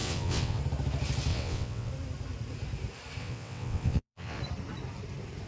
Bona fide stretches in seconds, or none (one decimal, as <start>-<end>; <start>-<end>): 0.6-1.3; 1.9-3.2; 4.4-5.5